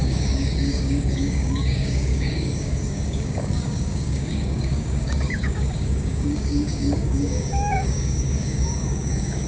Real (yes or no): no